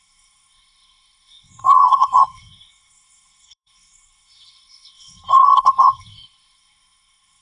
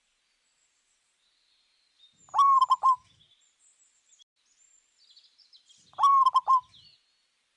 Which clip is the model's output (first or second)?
first